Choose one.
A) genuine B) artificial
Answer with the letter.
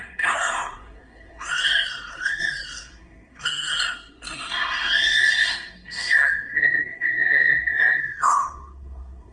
B